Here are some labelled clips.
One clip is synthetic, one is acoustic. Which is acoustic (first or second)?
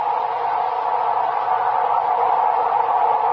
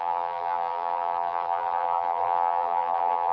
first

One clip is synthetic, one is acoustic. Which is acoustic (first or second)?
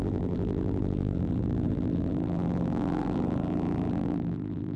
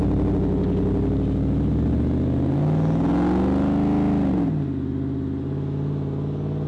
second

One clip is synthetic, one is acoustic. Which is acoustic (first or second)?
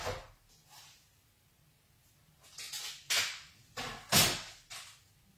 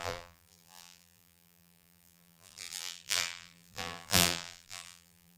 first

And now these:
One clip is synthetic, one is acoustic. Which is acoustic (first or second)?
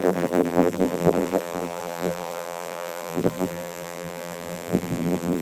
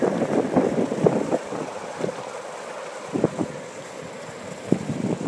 second